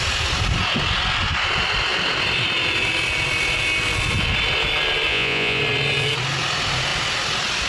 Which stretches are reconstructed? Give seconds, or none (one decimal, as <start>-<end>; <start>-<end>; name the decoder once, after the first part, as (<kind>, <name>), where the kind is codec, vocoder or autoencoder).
5.1-5.6 (vocoder, Vocos)

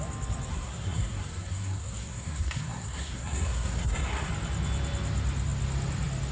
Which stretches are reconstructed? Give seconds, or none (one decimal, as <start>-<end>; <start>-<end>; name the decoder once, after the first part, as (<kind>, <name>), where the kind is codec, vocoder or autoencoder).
0.5-4.3 (codec, SNAC)